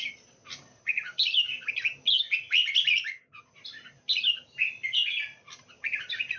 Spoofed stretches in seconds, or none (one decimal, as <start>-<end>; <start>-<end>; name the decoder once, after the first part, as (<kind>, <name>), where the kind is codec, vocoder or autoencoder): none